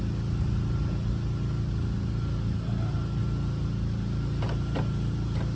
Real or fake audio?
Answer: real